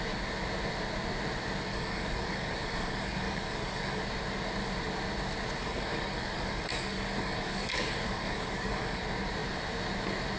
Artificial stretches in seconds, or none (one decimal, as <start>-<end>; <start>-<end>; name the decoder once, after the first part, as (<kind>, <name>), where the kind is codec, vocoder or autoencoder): 1.7-4.0 (codec, DAC); 5.6-9.0